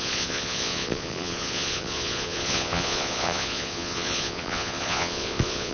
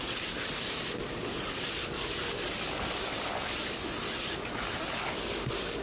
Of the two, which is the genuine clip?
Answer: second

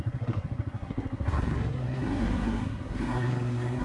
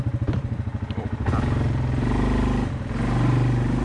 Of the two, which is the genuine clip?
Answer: second